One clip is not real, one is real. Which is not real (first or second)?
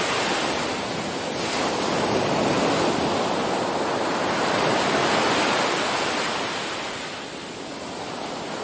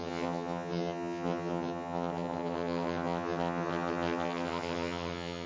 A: second